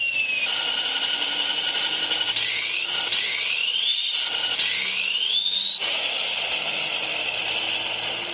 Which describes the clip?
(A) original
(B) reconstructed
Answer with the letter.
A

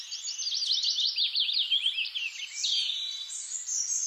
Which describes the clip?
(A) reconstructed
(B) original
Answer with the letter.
B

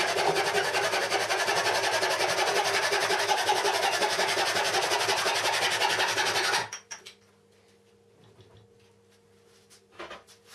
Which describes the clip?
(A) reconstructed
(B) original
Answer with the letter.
B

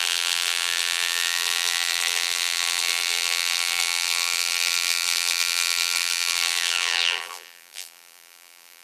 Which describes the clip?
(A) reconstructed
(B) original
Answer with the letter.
A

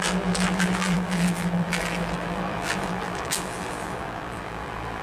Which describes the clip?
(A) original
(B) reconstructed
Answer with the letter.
B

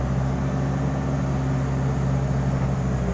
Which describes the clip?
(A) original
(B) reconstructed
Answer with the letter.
A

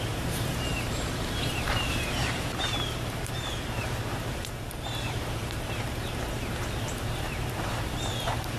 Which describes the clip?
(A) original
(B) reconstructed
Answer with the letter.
B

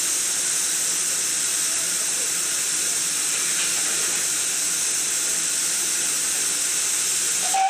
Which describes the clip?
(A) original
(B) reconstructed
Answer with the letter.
A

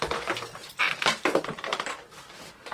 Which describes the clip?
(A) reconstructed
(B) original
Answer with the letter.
A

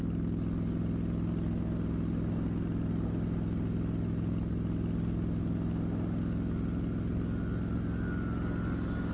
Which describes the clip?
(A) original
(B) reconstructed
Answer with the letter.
A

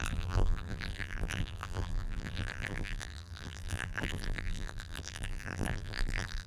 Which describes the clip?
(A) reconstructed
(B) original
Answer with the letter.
A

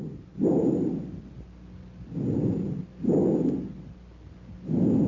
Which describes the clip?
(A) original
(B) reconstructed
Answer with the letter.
A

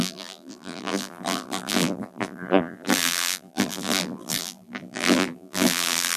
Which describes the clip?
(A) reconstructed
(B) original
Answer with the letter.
A